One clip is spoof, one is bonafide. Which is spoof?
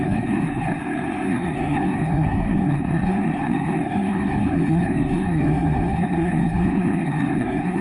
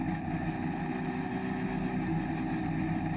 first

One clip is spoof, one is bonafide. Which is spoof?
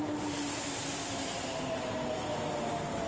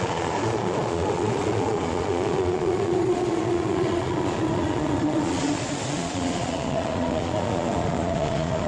second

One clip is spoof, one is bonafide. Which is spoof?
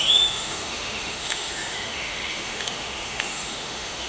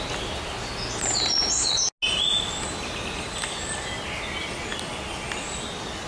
first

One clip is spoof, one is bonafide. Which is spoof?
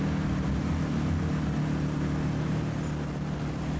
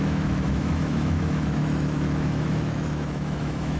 second